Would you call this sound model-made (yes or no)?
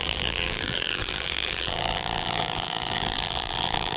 yes